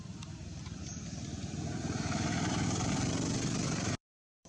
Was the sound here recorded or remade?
remade